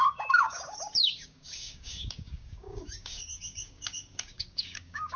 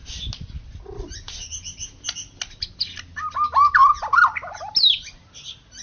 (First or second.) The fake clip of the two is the first